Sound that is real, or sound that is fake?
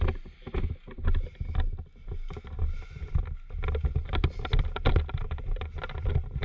real